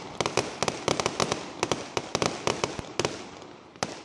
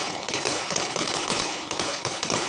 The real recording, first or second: first